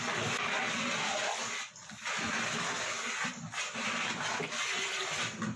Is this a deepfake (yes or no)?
no